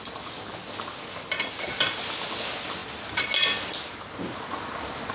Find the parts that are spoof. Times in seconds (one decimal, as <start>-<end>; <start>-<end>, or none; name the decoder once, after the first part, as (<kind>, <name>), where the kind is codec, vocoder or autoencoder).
none